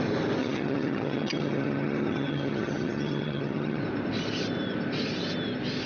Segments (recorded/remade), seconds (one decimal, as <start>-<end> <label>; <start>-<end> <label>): 0.0-0.4 recorded; 0.4-3.8 remade; 3.8-5.9 recorded